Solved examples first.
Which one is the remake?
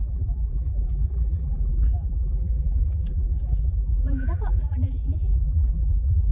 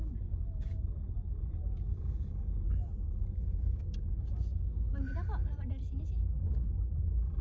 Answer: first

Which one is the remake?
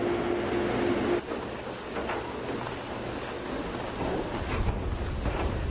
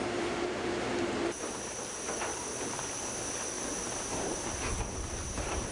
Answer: second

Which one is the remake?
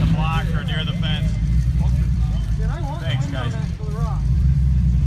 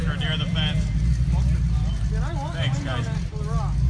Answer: first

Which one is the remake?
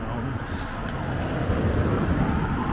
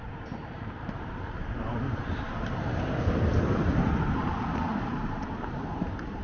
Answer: second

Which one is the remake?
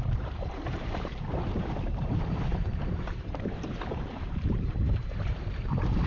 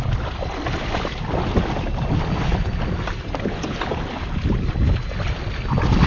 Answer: first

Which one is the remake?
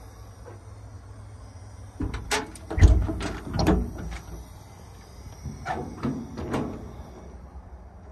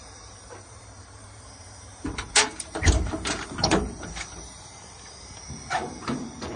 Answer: second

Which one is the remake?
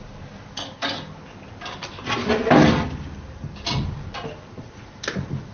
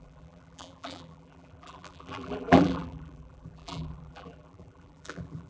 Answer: second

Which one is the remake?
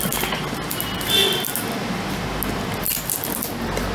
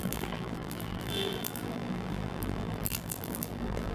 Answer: second